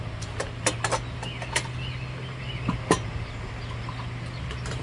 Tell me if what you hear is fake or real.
real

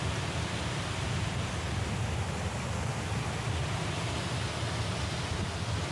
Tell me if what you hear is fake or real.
real